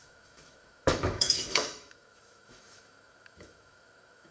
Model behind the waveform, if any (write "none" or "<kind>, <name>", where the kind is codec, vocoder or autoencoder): autoencoder, DAC-VAE